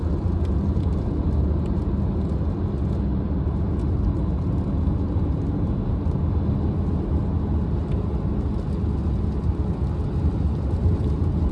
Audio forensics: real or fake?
real